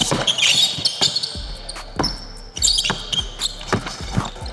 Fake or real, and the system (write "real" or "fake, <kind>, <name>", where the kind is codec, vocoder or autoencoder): real